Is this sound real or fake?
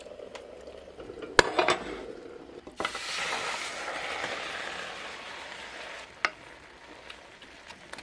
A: real